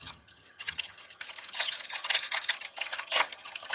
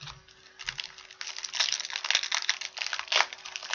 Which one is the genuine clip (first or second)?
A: second